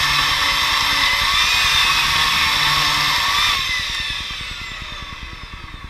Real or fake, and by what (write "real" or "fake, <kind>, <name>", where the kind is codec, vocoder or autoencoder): real